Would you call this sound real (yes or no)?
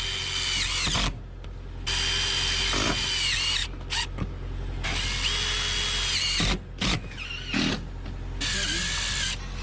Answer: yes